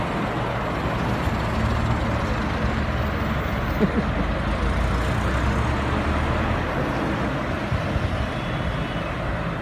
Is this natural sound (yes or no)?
yes